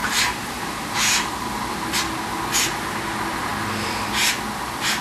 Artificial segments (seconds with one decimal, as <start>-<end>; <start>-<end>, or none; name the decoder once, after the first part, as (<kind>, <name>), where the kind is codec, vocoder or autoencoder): 0.0-1.9 (vocoder, BigVGAN v2)